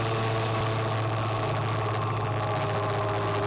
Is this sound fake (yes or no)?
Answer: no